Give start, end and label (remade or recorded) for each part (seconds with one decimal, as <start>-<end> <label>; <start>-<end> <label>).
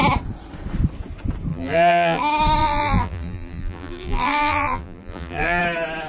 0.0-1.5 recorded; 1.5-2.2 remade; 2.2-2.6 recorded; 2.6-5.6 remade; 5.6-6.1 recorded